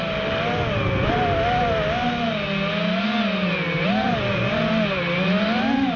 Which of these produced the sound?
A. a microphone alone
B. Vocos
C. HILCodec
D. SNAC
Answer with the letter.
A